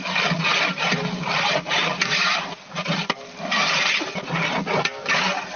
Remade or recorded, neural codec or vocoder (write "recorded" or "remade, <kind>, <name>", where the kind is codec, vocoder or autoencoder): remade, vocoder, BigVGAN v2